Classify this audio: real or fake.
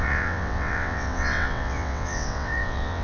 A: fake